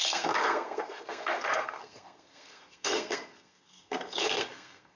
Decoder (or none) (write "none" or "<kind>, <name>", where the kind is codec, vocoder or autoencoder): codec, SNAC